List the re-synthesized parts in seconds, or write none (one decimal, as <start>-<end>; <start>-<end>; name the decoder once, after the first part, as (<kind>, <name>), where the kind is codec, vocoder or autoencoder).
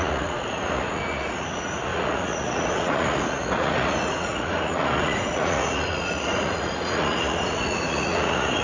0.0-8.6 (vocoder, Vocos)